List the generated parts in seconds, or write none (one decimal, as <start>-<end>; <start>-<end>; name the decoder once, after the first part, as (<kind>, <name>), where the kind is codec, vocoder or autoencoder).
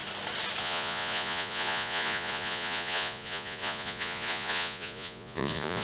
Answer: 0.6-5.8 (vocoder, Vocos)